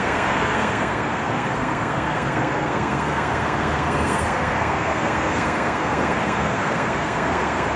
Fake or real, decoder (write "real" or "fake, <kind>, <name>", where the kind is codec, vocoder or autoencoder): fake, codec, SNAC